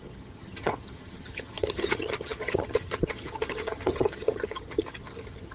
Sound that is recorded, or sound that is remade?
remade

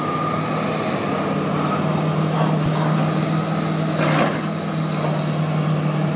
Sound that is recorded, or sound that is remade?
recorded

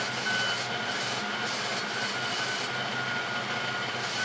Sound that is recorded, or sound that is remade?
recorded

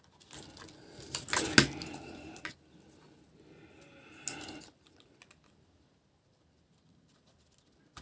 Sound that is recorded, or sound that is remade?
recorded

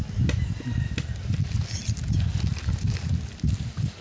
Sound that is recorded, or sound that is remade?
recorded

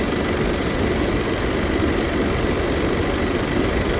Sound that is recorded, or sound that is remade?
recorded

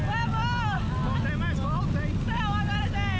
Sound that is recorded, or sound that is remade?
recorded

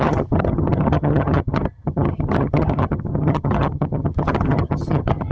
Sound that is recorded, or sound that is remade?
remade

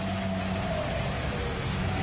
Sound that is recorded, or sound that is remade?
recorded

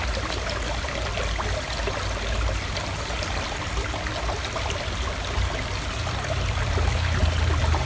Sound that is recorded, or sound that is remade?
recorded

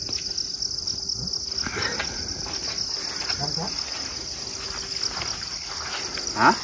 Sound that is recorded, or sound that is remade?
recorded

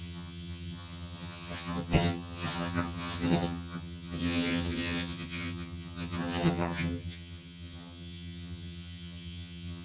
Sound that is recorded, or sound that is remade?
remade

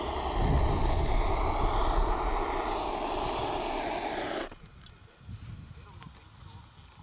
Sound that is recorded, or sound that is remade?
recorded